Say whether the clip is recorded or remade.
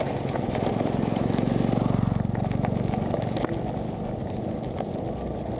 recorded